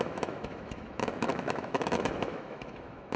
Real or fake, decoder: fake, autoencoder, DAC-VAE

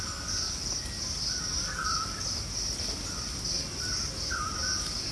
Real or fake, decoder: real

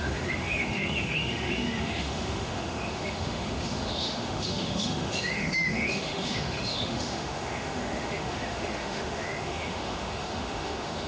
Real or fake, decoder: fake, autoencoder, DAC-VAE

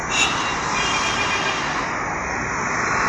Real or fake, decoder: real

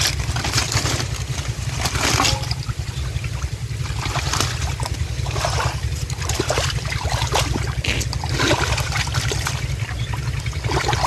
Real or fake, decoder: real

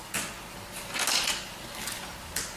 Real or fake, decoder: real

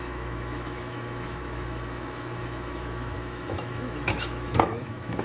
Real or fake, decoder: fake, autoencoder, DAC-VAE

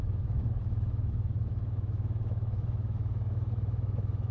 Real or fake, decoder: fake, autoencoder, DAC-VAE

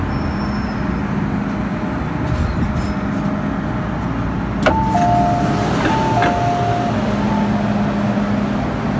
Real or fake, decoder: real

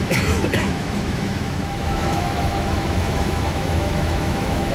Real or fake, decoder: fake, autoencoder, DAC-VAE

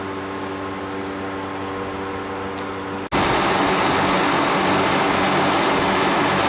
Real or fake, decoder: real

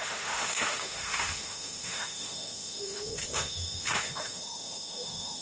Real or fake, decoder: fake, autoencoder, DAC-VAE